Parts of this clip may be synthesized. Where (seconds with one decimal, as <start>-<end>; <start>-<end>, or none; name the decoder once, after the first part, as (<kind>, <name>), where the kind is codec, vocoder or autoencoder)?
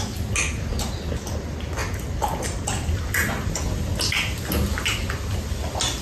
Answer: none